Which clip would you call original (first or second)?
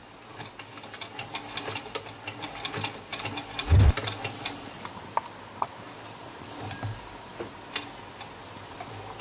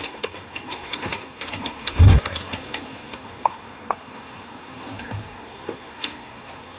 first